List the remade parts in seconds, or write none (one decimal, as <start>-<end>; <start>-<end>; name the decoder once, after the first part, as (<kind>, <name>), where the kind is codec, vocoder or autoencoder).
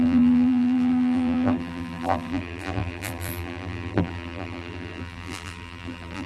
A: 0.0-6.3 (vocoder, BigVGAN v2)